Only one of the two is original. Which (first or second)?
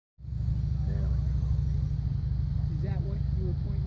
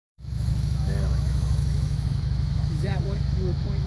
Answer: first